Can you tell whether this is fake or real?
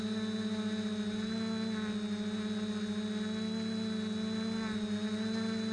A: real